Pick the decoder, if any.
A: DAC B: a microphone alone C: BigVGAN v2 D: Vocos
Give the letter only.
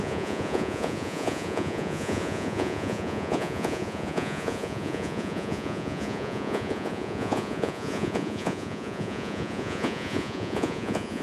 D